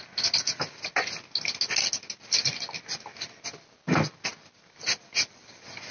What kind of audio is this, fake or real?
real